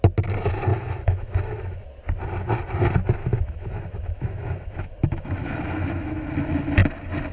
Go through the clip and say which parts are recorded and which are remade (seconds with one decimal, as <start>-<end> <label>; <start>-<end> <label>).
0.0-0.7 recorded; 0.7-2.0 remade; 2.0-3.2 recorded; 3.2-6.3 remade; 6.3-7.3 recorded